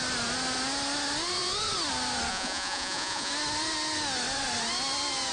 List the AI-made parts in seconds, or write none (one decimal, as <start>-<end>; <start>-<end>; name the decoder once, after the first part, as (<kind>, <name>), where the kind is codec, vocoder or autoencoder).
2.3-3.3 (vocoder, Vocos)